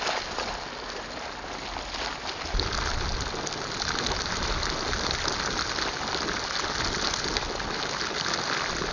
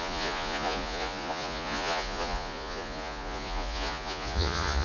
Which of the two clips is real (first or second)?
first